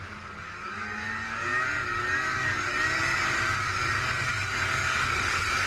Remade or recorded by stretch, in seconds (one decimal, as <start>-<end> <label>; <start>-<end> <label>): 0.0-5.7 remade